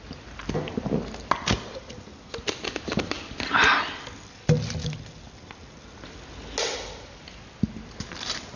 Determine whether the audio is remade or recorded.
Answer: recorded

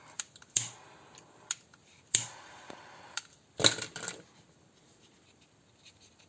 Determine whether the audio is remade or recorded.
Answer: recorded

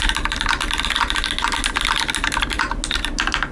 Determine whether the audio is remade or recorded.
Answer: recorded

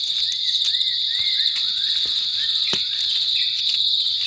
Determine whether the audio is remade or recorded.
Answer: recorded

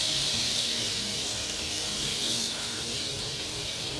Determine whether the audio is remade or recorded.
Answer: remade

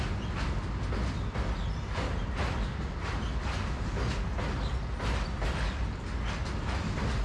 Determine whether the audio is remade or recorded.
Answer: recorded